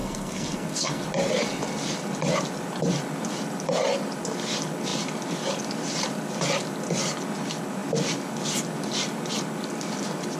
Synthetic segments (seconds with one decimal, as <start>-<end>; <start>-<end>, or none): 0.0-1.0

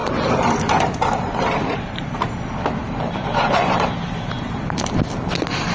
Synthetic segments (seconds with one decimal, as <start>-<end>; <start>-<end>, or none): 0.0-2.2; 2.8-4.8

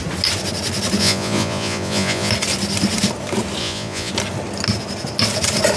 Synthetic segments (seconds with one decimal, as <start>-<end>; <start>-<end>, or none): 1.0-2.3; 3.6-4.1

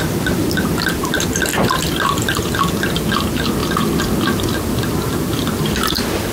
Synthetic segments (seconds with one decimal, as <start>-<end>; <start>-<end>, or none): 1.5-2.4; 3.6-5.6

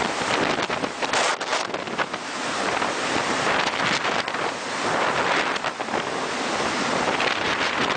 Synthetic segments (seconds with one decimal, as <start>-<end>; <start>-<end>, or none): none

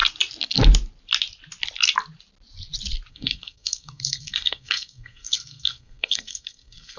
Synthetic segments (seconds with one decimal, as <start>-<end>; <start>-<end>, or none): 3.1-7.0

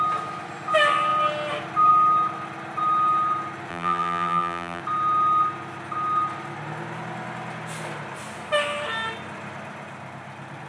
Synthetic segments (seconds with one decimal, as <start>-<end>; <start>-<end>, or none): 3.7-4.8